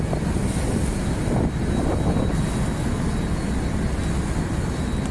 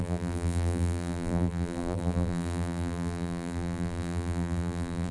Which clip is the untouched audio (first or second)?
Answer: first